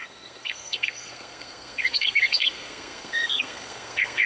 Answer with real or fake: fake